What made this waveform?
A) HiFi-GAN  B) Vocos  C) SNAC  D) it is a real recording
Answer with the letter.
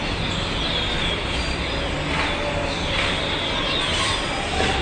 D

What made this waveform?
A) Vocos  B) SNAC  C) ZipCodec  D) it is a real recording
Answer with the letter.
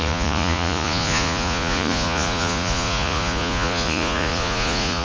A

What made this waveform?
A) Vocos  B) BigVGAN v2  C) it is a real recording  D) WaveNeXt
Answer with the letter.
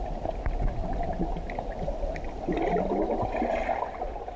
C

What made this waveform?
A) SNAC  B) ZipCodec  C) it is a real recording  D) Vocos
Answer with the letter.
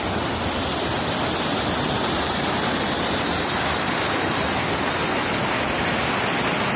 C